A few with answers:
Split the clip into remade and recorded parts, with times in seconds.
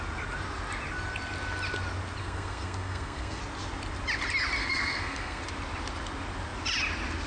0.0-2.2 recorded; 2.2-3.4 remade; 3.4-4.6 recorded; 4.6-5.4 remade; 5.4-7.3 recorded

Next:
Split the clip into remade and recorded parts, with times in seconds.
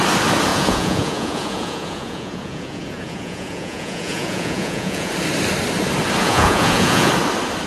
0.0-0.5 recorded; 0.5-5.1 remade; 5.1-6.2 recorded; 6.2-7.1 remade; 7.1-7.7 recorded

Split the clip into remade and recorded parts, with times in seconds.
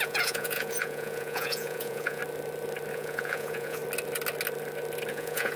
0.0-2.2 remade; 2.2-2.9 recorded; 2.9-3.8 remade; 3.8-5.1 recorded; 5.1-5.6 remade